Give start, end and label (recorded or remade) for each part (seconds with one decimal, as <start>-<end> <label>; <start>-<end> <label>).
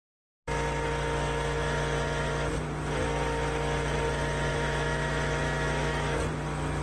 0.0-4.5 recorded; 4.5-6.2 remade; 6.2-6.8 recorded